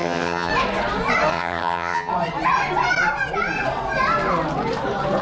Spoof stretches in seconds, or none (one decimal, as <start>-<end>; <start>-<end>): 0.0-0.5; 1.3-2.1